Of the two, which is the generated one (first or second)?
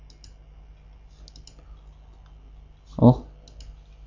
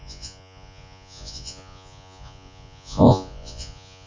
second